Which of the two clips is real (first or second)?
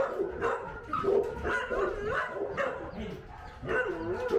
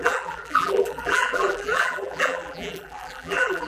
first